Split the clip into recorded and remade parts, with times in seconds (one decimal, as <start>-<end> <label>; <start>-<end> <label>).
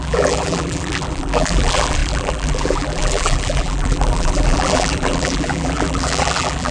0.0-6.7 remade